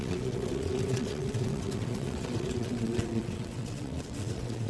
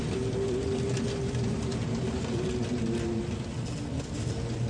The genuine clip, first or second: second